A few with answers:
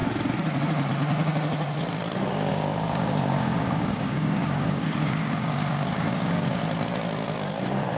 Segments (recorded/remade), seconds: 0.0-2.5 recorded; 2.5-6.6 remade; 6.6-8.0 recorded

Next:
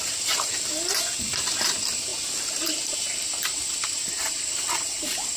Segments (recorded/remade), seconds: 0.0-2.1 remade; 2.1-2.6 recorded; 2.6-5.4 remade

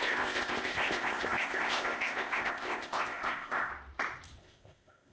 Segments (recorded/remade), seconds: 0.0-3.7 remade; 3.7-4.4 recorded; 4.4-5.1 remade

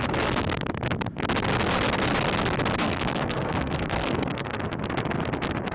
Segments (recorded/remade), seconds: 0.0-2.8 recorded; 2.8-4.7 remade; 4.7-5.7 recorded

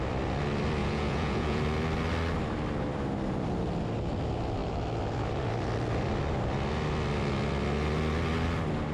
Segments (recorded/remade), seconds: 0.0-0.8 recorded; 0.8-1.6 remade; 1.6-8.9 recorded

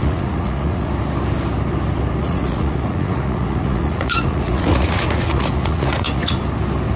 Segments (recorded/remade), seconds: 0.0-0.9 remade; 0.9-2.2 recorded; 2.2-6.4 remade; 6.4-7.0 recorded